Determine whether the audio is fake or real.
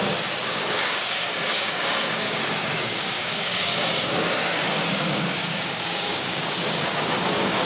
fake